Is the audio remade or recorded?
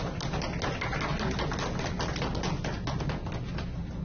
recorded